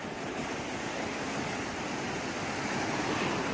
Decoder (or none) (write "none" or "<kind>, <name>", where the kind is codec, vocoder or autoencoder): none